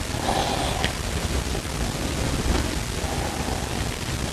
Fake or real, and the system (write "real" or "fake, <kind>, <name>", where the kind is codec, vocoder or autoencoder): real